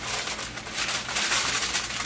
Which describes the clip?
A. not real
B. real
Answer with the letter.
B